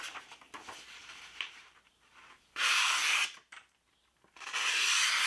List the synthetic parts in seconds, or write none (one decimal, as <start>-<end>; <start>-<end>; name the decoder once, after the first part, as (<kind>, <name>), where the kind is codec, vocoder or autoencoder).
1.0-4.2 (vocoder, BigVGAN v2)

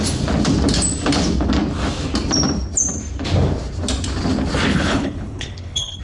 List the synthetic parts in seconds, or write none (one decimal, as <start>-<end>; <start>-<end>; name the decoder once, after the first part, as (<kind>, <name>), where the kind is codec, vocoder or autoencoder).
4.7-6.0 (codec, HILCodec)

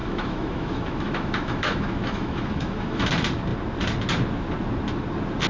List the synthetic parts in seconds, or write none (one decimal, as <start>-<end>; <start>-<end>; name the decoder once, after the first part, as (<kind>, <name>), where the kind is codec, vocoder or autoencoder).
0.0-3.1 (autoencoder, DAC-VAE)

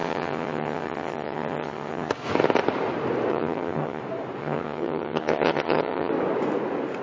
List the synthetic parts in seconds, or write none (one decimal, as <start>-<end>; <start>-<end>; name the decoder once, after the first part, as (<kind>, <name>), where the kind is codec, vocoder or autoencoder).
0.0-2.1 (vocoder, HiFi-GAN); 3.3-4.0; 4.4-6.1

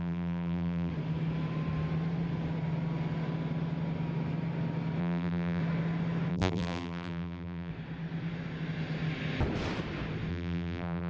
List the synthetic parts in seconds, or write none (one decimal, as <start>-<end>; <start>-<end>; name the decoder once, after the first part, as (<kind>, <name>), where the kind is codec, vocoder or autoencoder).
0.0-0.9 (vocoder, BigVGAN v2); 5.0-5.6; 6.3-7.7; 10.3-11.1